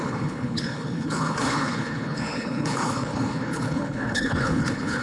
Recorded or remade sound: remade